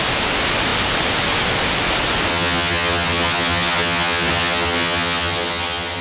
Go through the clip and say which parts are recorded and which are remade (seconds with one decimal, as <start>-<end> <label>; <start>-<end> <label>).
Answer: 0.0-2.3 recorded; 2.3-6.0 remade